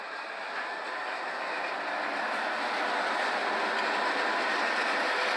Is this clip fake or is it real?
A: real